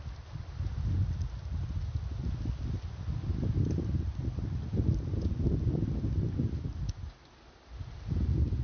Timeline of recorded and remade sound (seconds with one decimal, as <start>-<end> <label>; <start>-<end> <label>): 0.0-4.2 recorded; 4.2-6.9 remade; 6.9-8.6 recorded